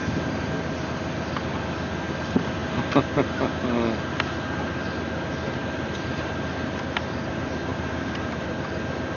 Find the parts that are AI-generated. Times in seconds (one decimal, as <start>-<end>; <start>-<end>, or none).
7.7-8.6